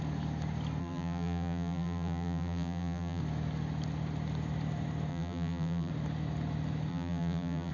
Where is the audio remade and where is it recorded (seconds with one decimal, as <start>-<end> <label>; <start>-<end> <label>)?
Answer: 0.0-0.8 recorded; 0.8-3.2 remade; 3.2-5.1 recorded; 5.1-5.9 remade; 5.9-6.9 recorded; 6.9-7.7 remade